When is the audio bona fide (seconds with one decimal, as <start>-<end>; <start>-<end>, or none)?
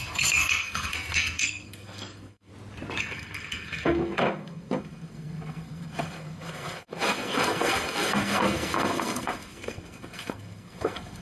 2.5-3.0